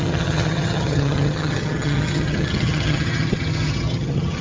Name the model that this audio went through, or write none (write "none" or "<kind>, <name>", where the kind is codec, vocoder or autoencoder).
vocoder, HiFi-GAN